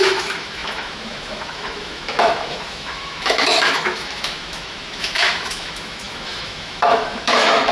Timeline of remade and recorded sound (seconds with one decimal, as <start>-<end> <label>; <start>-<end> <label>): 0.0-7.7 remade